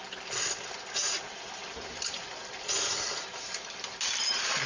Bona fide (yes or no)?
yes